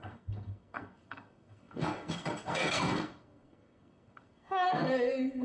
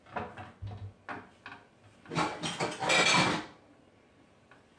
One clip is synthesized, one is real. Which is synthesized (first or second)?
first